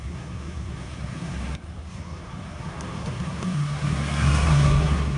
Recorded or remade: remade